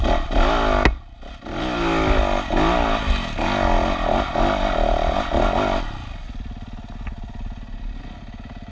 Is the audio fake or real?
real